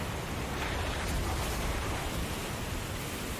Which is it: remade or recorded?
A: recorded